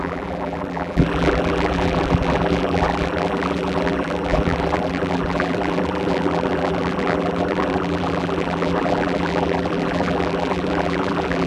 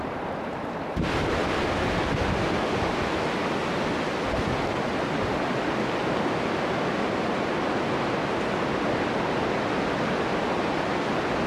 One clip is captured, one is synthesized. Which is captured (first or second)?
second